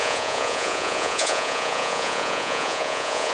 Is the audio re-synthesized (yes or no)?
yes